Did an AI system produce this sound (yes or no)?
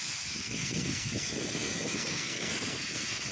yes